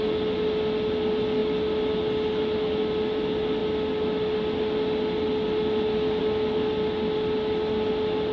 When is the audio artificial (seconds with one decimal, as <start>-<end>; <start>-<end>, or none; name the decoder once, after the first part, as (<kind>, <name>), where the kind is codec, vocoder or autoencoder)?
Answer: none